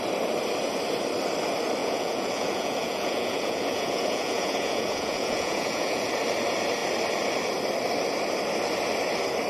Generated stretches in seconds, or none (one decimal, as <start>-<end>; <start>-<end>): 1.8-6.1